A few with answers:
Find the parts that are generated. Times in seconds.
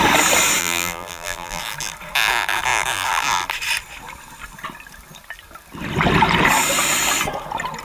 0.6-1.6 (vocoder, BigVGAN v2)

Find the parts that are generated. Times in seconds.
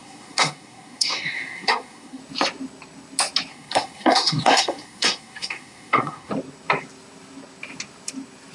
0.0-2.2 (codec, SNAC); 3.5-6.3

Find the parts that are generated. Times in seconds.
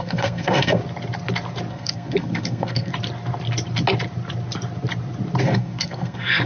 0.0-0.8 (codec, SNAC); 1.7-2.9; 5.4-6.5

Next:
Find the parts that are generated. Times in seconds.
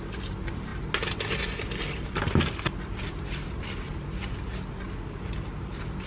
none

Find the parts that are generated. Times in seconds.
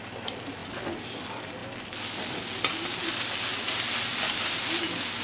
none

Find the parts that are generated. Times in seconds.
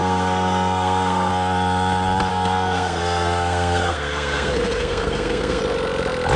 0.0-1.3 (codec, SNAC); 2.3-5.6